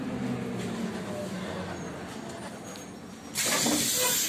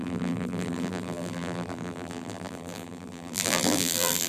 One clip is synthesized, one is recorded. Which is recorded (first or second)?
first